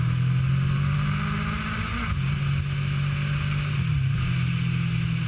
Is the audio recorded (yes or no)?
yes